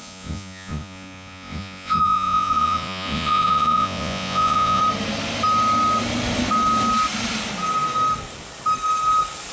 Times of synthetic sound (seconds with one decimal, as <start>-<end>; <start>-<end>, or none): 0.0-4.8

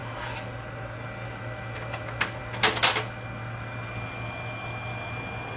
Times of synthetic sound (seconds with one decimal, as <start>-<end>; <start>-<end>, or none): none

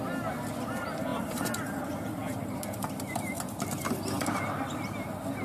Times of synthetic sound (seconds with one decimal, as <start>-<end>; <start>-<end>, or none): 1.1-4.3

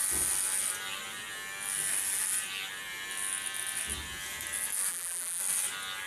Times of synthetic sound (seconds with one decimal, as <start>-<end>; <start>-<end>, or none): 4.9-5.4

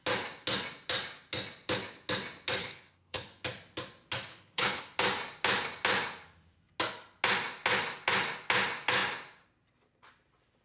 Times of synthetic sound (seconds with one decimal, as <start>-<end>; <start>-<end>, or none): 2.6-3.3; 4.3-4.8

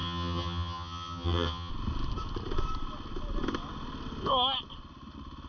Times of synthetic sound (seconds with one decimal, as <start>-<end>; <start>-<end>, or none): 0.0-1.7

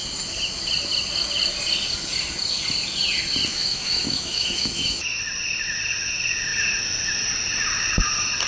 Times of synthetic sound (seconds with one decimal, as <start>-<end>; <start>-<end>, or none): 3.5-5.2

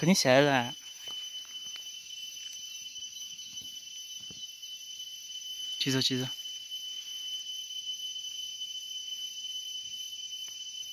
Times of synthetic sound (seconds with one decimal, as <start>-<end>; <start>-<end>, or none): 2.9-3.7